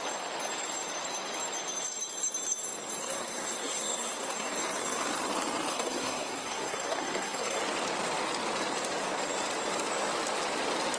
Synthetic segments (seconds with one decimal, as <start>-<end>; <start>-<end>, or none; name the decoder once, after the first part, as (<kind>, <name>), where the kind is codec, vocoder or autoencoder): 3.0-4.5 (codec, SNAC); 5.7-7.6